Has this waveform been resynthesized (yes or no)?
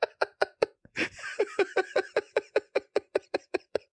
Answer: yes